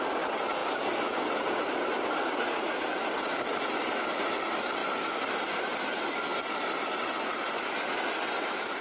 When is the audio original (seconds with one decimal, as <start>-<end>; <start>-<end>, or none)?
0.0-6.3; 6.8-8.8